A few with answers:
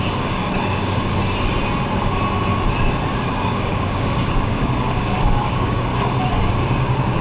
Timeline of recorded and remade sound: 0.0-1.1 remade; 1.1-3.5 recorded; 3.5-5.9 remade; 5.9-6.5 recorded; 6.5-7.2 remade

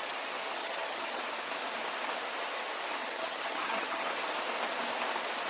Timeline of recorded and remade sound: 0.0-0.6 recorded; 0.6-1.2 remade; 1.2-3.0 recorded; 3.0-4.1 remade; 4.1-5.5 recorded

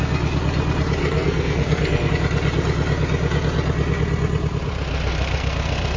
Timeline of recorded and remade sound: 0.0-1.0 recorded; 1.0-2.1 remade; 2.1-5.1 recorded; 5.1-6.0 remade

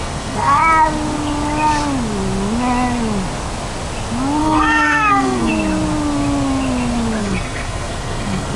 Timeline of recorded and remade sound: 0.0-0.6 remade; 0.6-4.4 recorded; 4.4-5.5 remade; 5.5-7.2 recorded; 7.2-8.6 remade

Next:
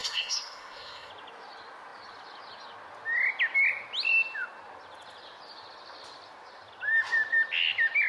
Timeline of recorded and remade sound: 0.0-1.1 remade; 1.1-8.1 recorded